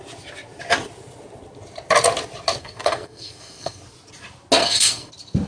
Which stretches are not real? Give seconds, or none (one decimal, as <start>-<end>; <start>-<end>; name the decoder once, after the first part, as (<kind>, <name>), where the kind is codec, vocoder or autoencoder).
2.6-3.8 (codec, SNAC); 4.6-5.1

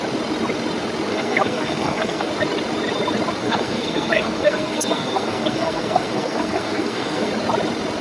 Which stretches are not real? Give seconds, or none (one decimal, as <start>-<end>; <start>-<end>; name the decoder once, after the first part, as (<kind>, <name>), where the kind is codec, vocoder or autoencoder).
1.1-2.3 (codec, SNAC); 3.4-7.3